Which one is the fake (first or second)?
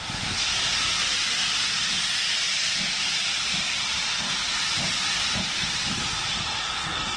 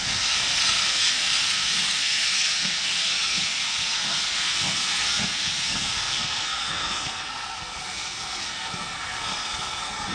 second